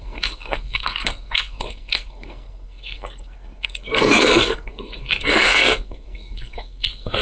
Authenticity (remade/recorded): remade